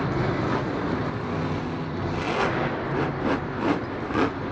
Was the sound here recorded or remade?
recorded